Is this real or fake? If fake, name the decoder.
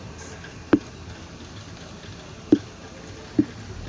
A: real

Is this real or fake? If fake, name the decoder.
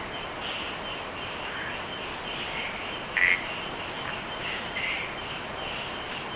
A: real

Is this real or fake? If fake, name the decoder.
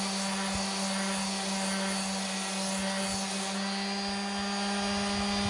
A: real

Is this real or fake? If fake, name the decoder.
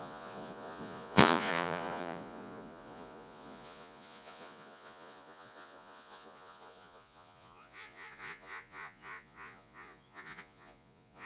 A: fake, vocoder, Vocos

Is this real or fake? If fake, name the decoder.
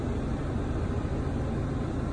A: real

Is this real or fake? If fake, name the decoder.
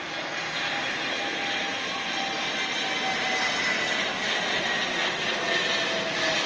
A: real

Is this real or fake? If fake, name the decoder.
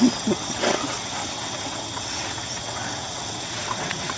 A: fake, vocoder, WaveNeXt